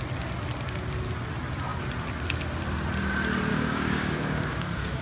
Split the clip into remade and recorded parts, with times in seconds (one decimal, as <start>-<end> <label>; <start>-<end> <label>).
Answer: 0.0-3.5 recorded; 3.5-5.0 remade